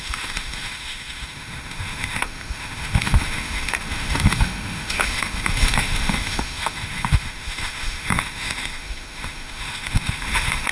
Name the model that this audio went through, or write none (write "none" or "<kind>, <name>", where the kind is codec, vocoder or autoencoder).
autoencoder, DAC-VAE